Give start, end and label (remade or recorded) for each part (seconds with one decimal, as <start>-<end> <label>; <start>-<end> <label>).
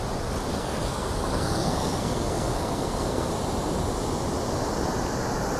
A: 0.0-0.5 recorded; 0.5-3.3 remade; 3.3-5.6 recorded